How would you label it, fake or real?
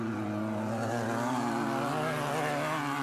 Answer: real